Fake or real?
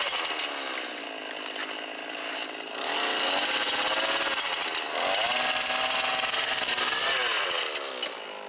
real